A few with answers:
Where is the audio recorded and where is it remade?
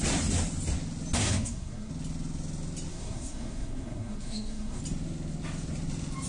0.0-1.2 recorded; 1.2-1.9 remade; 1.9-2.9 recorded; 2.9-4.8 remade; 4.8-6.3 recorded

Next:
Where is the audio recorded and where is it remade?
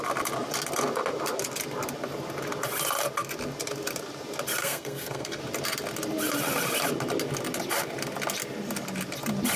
0.0-4.6 recorded; 4.6-5.4 remade; 5.4-9.6 recorded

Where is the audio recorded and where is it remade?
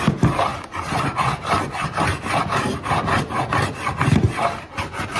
0.0-5.2 recorded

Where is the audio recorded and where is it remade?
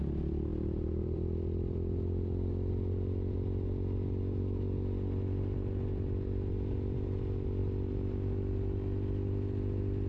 0.0-10.1 recorded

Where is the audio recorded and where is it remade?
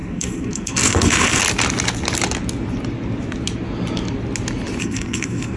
0.0-1.4 remade; 1.4-4.8 recorded; 4.8-5.6 remade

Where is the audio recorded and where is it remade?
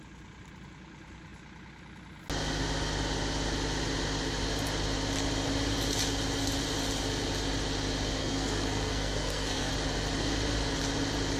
0.0-8.2 recorded; 8.2-9.7 remade; 9.7-11.4 recorded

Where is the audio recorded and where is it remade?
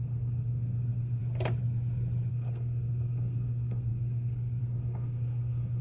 0.0-1.2 remade; 1.2-2.3 recorded; 2.3-5.8 remade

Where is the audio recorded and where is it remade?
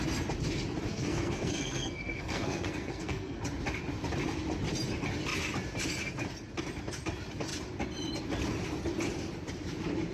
0.0-0.9 recorded; 0.9-3.4 remade; 3.4-10.1 recorded